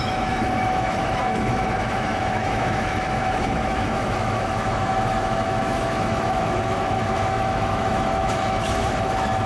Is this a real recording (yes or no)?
no